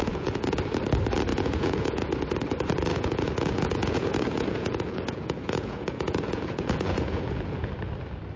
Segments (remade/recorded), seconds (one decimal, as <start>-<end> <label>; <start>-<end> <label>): 0.0-0.6 remade; 0.6-1.3 recorded; 1.3-2.1 remade; 2.1-2.9 recorded; 2.9-7.7 remade; 7.7-8.4 recorded